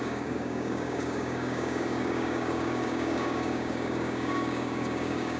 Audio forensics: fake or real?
fake